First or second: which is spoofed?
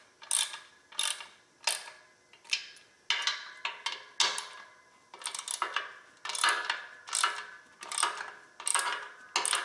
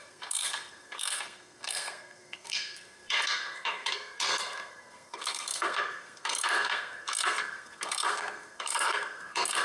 second